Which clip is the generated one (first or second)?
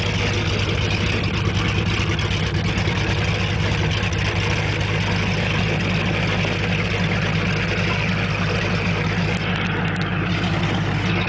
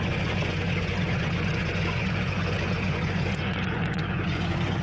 second